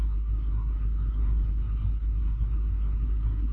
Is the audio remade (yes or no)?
yes